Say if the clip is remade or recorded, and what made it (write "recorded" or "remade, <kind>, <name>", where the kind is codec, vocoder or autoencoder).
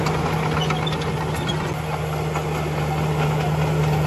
recorded